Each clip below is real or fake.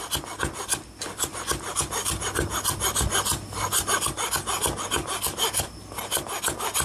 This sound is real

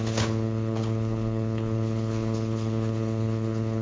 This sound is fake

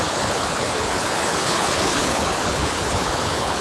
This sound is fake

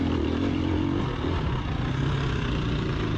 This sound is real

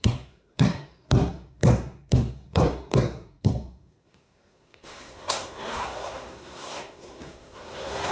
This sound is fake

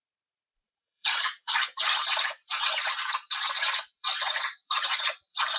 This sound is fake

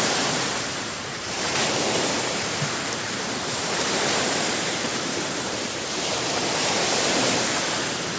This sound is fake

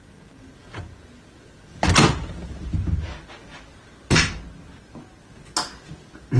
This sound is real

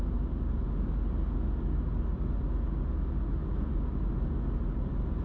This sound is real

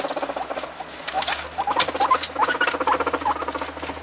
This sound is real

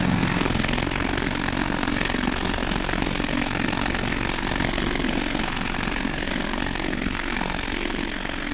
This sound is fake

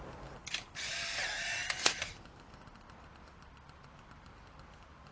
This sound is real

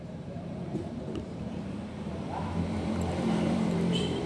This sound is fake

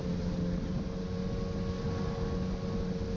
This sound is real